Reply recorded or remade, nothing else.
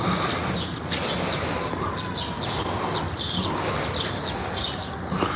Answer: recorded